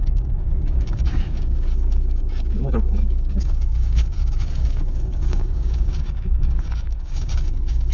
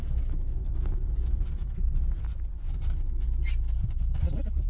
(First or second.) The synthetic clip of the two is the first